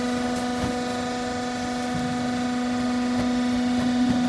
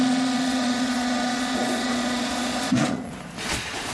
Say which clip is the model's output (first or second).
second